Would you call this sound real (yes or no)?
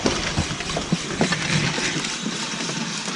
yes